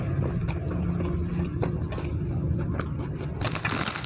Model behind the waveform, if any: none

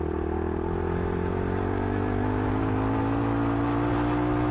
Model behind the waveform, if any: none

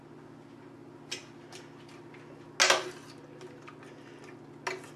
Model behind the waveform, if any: none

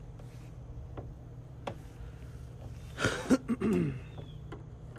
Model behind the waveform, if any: none